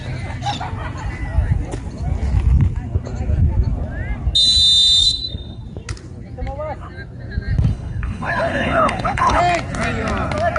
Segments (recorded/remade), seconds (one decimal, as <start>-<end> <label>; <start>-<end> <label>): 0.0-5.0 recorded; 5.0-5.6 remade; 5.6-7.7 recorded; 7.7-9.4 remade; 9.4-10.6 recorded